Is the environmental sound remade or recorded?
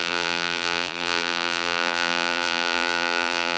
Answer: remade